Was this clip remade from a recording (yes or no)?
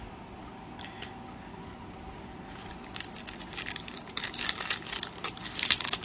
no